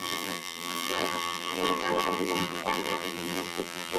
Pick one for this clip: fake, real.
fake